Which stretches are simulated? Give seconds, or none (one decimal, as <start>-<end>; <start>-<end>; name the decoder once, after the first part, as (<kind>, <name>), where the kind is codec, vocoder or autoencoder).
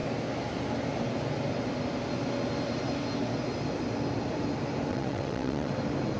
4.9-5.7 (vocoder, WaveNeXt)